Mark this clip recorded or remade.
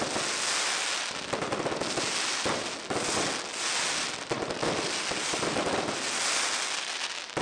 recorded